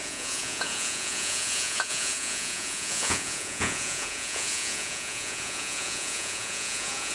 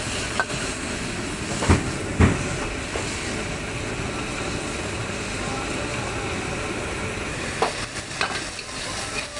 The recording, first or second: second